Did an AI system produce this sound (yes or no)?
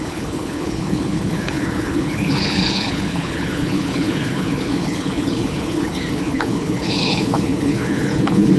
yes